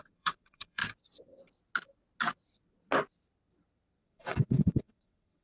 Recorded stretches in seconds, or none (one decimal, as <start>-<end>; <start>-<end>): 0.8-4.0